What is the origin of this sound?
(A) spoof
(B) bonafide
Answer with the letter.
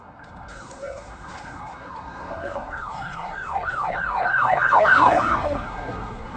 A